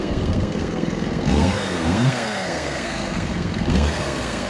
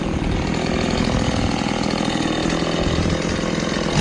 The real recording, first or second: second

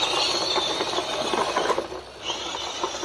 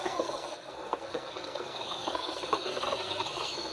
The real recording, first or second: first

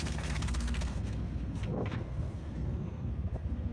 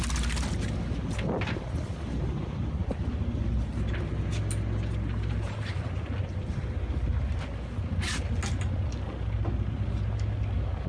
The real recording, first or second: second